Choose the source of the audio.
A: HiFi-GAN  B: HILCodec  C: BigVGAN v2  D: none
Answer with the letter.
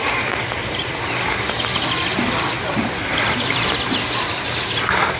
D